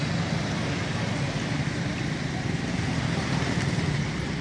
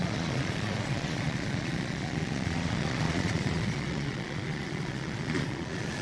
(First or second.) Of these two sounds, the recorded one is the first